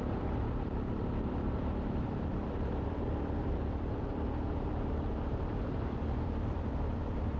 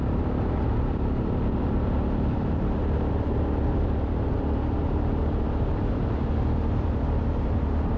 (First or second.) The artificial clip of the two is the first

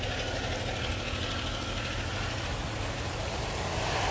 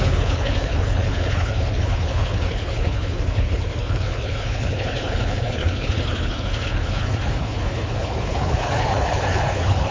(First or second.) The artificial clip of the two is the second